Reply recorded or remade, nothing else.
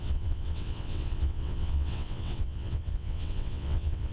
remade